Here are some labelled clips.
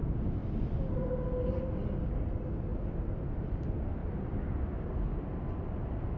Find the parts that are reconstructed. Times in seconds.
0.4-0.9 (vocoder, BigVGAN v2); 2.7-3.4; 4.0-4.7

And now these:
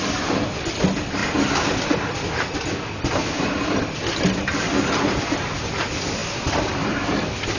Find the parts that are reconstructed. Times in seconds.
0.0-1.2 (vocoder, BigVGAN v2); 1.7-6.2; 6.9-7.6

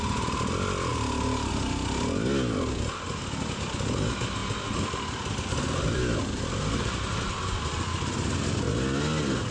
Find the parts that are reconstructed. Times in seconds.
4.4-8.6 (vocoder, BigVGAN v2)